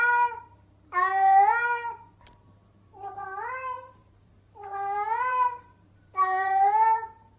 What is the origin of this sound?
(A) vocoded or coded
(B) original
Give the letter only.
A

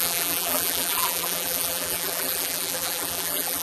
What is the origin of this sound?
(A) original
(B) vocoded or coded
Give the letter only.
B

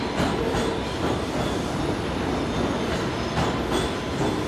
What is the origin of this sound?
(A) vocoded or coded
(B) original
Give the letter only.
B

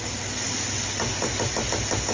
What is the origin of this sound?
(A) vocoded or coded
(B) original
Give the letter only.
B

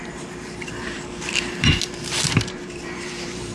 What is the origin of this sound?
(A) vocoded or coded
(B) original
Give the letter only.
A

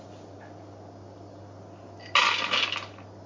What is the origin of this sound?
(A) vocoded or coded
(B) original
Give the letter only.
B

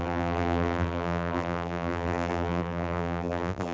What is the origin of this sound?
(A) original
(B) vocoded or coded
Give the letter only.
B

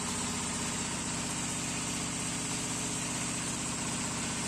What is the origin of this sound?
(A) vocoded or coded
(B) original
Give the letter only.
B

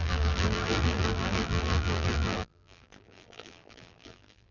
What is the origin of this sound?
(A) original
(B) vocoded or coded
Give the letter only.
B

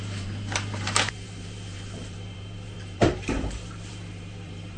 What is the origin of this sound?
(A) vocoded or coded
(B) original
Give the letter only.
A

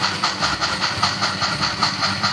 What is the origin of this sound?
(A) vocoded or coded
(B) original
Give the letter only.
A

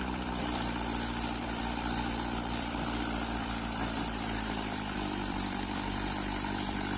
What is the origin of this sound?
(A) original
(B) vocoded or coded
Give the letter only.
B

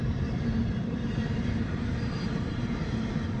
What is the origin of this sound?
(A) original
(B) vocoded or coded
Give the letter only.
B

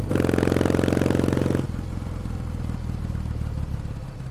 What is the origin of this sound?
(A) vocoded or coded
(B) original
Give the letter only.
B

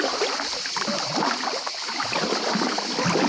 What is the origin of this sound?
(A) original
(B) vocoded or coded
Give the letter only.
A